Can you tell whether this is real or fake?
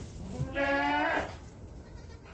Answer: real